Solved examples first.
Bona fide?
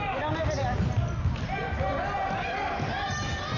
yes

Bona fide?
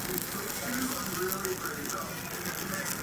yes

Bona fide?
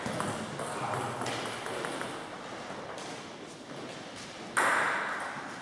yes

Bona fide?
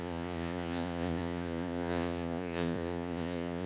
no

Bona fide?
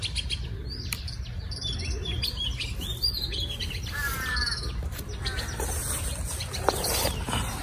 yes